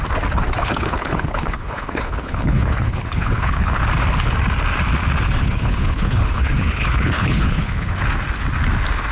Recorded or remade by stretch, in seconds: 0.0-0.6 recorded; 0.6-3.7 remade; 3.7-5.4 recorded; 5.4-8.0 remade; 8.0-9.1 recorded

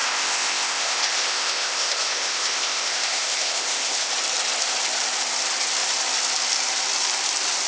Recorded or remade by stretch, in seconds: 0.0-4.1 remade; 4.1-7.7 recorded

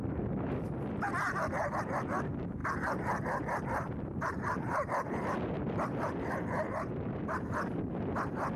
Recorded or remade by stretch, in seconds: 0.0-2.6 recorded; 2.6-7.8 remade; 7.8-8.6 recorded

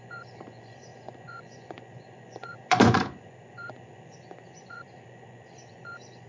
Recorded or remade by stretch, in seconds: 0.0-6.3 remade

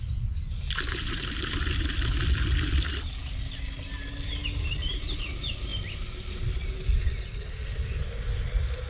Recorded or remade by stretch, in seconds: 0.0-8.9 recorded